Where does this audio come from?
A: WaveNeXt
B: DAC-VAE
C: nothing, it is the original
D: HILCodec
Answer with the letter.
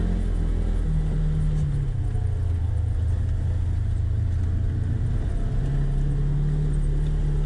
C